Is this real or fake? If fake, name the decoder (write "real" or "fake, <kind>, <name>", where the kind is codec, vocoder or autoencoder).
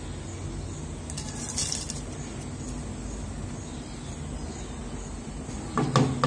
real